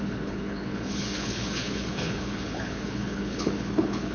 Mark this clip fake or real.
fake